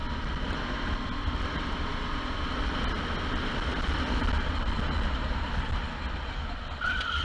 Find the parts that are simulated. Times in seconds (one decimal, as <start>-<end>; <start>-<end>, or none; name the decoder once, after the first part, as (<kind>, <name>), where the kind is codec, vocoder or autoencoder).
none

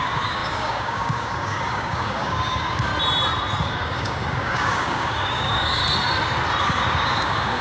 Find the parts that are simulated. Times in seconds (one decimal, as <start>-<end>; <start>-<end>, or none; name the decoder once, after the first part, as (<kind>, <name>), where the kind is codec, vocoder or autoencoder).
0.0-2.9 (codec, DAC); 3.6-5.8; 6.6-7.6

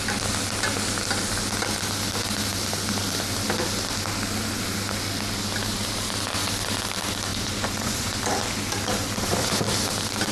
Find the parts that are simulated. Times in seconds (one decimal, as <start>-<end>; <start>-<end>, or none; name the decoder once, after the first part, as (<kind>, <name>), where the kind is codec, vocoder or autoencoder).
7.3-8.2 (vocoder, Vocos)